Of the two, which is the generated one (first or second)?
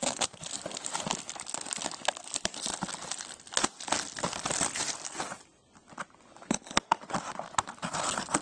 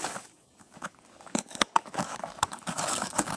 second